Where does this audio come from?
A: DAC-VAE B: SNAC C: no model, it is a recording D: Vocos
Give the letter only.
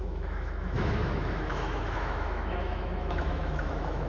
A